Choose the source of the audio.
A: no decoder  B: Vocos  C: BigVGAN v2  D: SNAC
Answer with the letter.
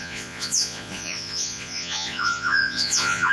B